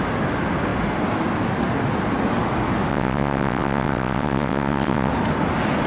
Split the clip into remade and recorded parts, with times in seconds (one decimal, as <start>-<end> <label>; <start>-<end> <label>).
0.0-2.9 recorded; 2.9-5.1 remade; 5.1-5.9 recorded